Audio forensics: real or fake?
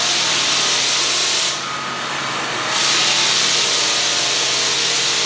real